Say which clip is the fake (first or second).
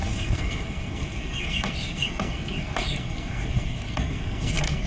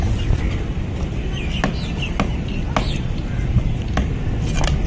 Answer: first